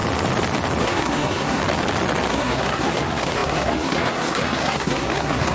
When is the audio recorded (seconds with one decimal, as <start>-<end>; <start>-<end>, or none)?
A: 0.0-0.8; 1.6-2.3